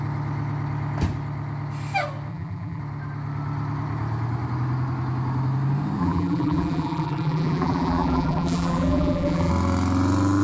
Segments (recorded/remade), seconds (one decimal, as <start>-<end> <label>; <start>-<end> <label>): 0.0-2.3 recorded; 2.3-2.8 remade; 2.8-6.0 recorded; 6.0-9.5 remade; 9.5-10.4 recorded